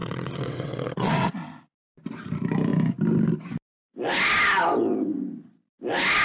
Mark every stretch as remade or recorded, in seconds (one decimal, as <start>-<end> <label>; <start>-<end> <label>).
0.0-1.3 remade; 1.3-6.2 recorded